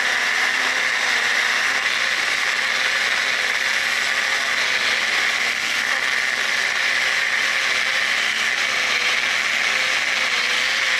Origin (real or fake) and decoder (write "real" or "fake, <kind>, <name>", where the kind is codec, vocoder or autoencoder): real